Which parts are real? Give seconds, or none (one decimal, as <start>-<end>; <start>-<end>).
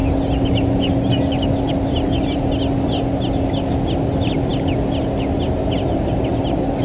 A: 0.0-6.8